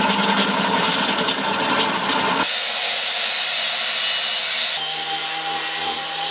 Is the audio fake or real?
real